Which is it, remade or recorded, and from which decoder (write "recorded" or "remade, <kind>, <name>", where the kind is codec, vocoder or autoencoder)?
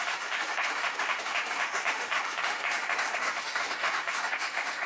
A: remade, autoencoder, DAC-VAE